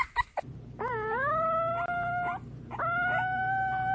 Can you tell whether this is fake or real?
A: real